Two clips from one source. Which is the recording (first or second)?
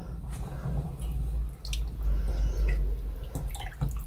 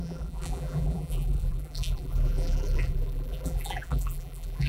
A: first